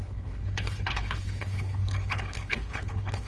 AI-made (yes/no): yes